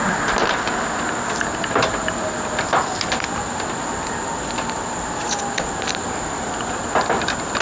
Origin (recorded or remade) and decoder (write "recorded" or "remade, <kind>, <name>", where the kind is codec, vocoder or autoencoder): recorded